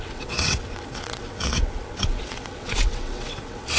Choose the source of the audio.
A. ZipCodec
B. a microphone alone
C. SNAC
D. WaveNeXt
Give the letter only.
D